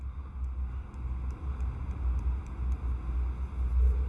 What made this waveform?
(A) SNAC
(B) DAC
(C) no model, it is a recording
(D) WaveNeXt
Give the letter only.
C